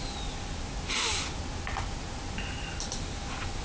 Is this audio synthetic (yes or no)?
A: no